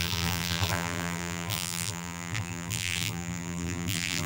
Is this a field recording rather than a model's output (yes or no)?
no